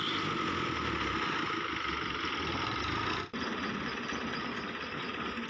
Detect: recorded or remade recorded